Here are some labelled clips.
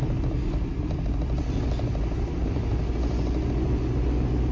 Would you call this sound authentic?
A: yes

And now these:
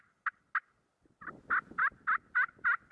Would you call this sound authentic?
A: yes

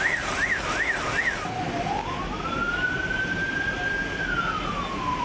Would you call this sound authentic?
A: yes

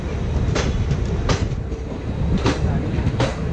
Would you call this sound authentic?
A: yes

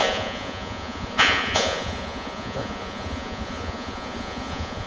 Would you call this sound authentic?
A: no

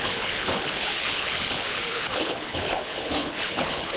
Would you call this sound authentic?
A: no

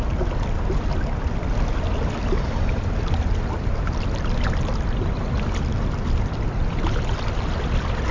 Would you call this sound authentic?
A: yes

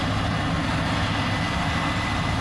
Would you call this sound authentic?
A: yes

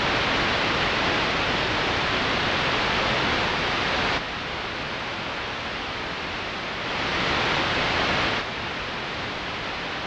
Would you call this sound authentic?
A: yes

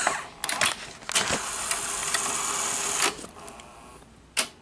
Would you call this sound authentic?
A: yes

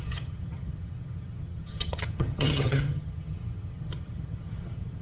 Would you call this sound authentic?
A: no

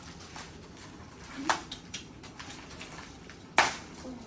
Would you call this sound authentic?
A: yes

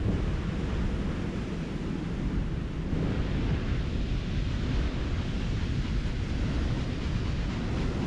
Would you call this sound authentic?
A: yes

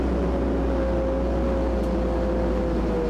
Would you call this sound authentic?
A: yes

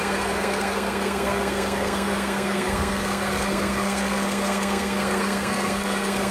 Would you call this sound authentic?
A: no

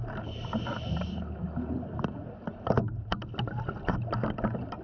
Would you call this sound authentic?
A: yes